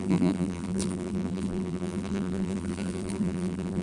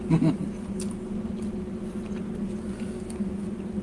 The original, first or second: second